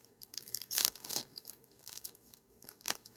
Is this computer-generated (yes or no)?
yes